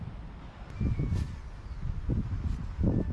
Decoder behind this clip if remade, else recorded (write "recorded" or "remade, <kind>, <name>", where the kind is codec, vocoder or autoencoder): recorded